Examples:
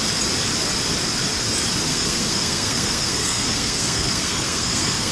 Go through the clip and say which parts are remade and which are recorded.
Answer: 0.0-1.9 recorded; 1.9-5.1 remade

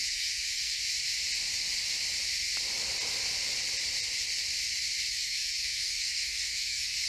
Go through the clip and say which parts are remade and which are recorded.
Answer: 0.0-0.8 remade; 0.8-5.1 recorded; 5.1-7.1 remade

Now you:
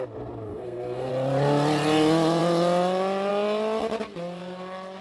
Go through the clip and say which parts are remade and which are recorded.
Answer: 0.0-0.5 recorded; 0.5-1.1 remade; 1.1-5.0 recorded